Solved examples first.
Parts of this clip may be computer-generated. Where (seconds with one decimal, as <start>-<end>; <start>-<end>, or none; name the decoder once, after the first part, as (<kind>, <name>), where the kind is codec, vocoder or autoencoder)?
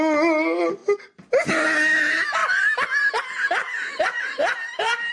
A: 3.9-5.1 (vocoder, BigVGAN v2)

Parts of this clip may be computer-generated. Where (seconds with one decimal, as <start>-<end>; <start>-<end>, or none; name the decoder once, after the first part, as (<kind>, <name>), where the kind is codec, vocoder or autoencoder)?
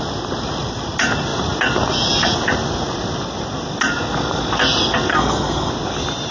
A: 5.1-5.7 (codec, SNAC)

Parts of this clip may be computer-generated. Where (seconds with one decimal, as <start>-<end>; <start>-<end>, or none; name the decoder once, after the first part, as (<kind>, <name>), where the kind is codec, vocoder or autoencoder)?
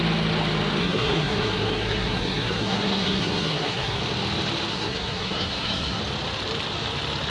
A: 0.8-4.0 (codec, SNAC); 4.7-6.0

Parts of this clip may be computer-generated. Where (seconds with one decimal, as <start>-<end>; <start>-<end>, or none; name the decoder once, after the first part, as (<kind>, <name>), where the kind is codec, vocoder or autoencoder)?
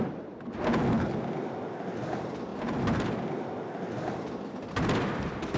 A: none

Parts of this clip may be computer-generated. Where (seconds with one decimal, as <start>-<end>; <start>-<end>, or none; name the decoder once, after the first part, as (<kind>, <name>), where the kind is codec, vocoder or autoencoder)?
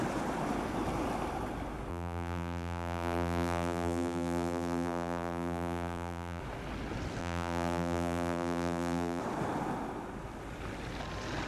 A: 1.9-6.4 (vocoder, BigVGAN v2); 7.2-9.2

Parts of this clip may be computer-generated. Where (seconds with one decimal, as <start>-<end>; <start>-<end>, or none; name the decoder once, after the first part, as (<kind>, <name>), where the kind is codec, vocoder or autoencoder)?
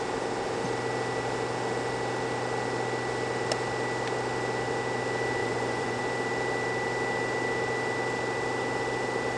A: 5.4-6.0 (vocoder, Vocos)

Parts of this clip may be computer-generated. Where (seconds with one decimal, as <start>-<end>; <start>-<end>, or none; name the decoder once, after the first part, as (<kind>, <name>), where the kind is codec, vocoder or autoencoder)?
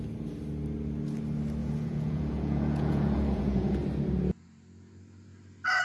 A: 1.6-3.8 (vocoder, Vocos)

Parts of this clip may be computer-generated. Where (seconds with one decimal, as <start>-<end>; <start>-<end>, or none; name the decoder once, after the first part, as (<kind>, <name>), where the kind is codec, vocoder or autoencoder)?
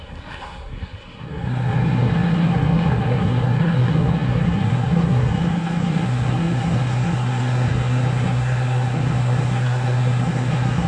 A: 0.0-10.9 (codec, SNAC)